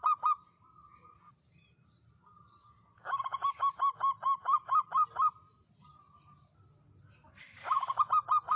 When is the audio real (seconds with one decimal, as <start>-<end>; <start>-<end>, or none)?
0.0-8.6